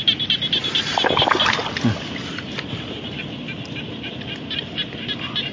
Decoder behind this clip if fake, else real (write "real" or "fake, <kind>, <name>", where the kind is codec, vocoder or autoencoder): real